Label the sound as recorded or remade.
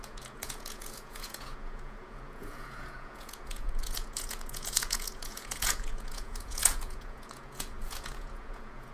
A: remade